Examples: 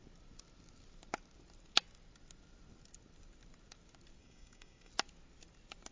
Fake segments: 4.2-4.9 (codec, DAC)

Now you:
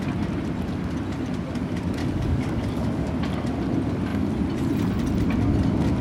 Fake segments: 2.0-3.1 (codec, DAC)

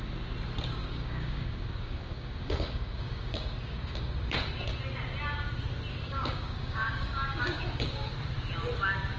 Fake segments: 0.8-4.4 (codec, DAC); 5.9-8.1

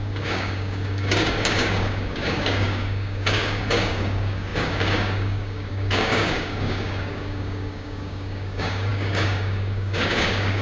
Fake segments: 0.0-10.6 (codec, DAC)

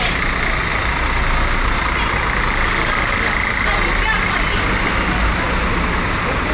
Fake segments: none

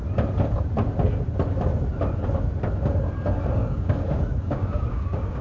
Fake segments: 3.6-5.4 (codec, DAC)

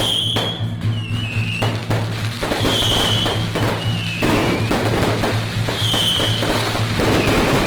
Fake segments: none

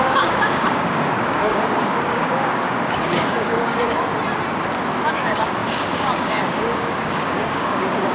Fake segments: 0.0-4.1 (codec, DAC); 5.1-8.1